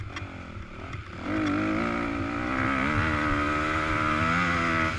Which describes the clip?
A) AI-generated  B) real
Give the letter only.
B